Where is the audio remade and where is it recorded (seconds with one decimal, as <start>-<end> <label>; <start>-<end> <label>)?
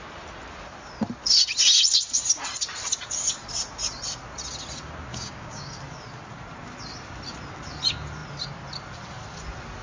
0.0-5.1 recorded; 5.1-5.7 remade; 5.7-9.8 recorded